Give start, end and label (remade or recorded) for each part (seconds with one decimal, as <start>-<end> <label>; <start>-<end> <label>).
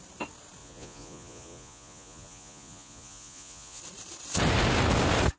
0.0-0.6 recorded; 0.6-3.8 remade; 3.8-5.4 recorded